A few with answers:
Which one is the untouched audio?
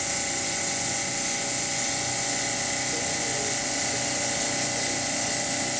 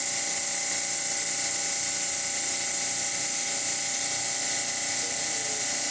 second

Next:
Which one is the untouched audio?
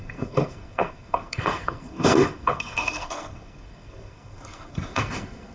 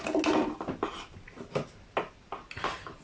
second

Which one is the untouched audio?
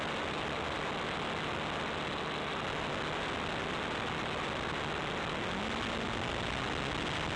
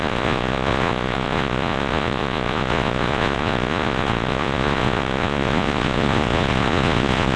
first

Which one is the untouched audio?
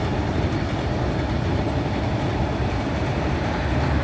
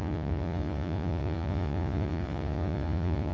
first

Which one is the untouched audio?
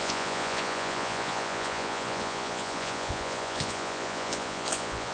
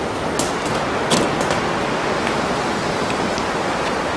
second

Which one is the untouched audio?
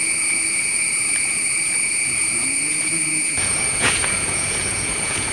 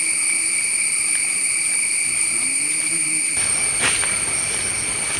second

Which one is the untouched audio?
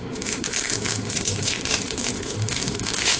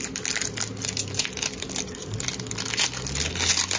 second